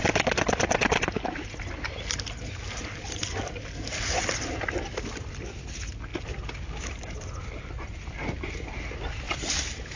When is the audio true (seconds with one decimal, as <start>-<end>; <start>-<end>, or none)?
0.0-10.0